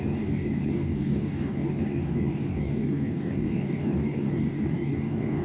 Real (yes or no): no